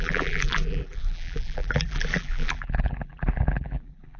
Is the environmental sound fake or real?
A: fake